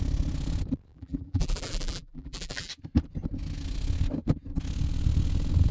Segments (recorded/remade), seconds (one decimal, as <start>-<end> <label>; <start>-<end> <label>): 0.0-0.9 recorded; 0.9-2.7 remade; 2.7-5.7 recorded